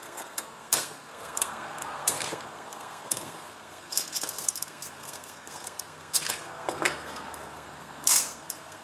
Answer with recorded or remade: remade